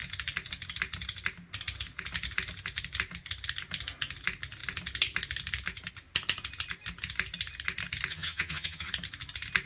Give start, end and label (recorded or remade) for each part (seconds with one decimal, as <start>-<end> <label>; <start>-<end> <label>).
0.0-8.1 recorded; 8.1-8.9 remade; 8.9-9.7 recorded